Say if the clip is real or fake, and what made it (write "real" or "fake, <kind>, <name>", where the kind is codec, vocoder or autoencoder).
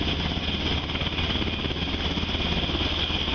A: real